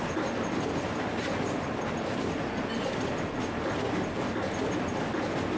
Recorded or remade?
recorded